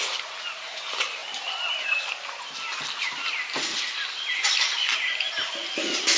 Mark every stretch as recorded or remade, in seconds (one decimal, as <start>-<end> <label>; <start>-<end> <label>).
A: 0.0-6.2 recorded